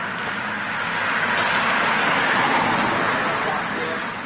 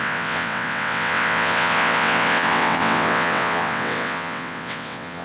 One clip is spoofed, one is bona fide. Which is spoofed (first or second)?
second